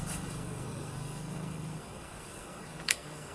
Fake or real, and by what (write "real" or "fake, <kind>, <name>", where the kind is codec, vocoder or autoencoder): fake, codec, SNAC